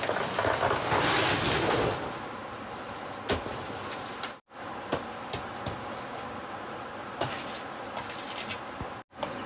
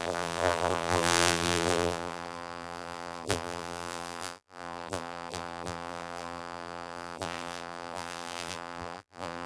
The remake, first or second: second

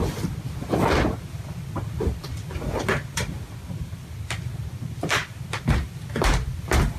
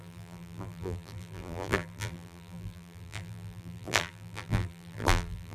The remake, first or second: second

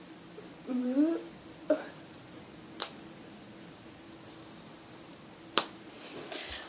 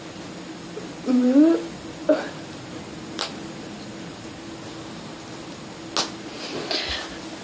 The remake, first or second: first